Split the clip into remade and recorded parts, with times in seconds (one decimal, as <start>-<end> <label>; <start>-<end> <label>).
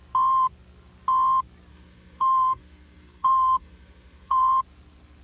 0.0-1.7 recorded; 1.7-4.5 remade; 4.5-5.2 recorded